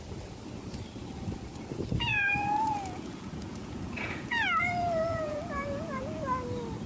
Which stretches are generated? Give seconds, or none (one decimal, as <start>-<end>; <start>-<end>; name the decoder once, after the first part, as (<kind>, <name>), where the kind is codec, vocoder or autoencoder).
2.1-6.2 (vocoder, Vocos)